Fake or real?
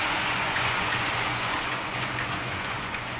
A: fake